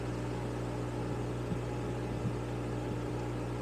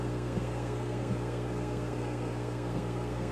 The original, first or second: first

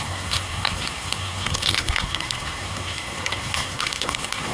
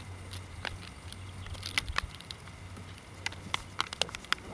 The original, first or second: second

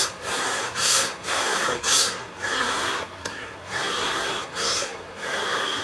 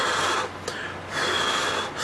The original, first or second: second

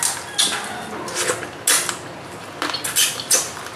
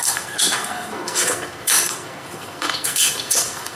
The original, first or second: first